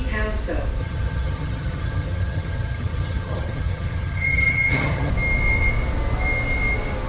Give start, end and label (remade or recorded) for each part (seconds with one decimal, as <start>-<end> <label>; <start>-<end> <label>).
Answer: 0.0-0.8 recorded; 0.8-5.1 remade; 5.1-7.1 recorded